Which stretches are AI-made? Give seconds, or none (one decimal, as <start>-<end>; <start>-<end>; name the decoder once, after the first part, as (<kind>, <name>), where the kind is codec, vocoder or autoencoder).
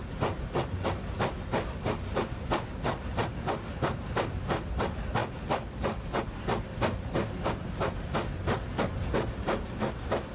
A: none